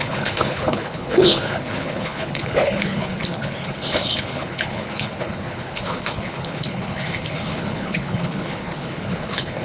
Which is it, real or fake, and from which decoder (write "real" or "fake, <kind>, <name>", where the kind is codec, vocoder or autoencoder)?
fake, codec, HILCodec